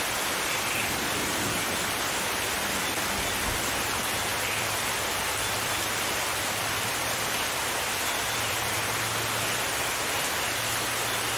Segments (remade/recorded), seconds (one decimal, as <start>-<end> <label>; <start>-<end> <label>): 0.0-4.3 recorded; 4.3-7.6 remade; 7.6-11.4 recorded